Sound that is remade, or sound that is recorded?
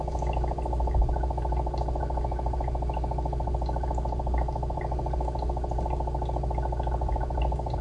recorded